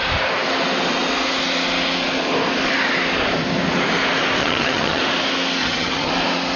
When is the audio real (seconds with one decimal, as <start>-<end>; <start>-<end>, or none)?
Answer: 0.0-4.4; 5.0-5.6; 6.1-6.6